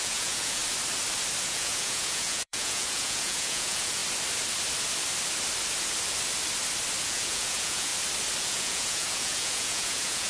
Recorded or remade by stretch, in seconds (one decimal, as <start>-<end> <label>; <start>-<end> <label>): 0.0-0.6 remade; 0.6-1.4 recorded; 1.4-4.0 remade; 4.0-7.0 recorded; 7.0-7.9 remade; 7.9-8.4 recorded; 8.4-10.3 remade